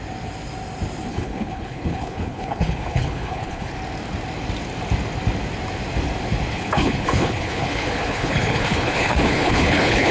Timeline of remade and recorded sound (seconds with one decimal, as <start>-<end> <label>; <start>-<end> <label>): 0.0-1.1 recorded; 1.1-3.7 remade; 3.7-6.5 recorded; 6.5-10.1 remade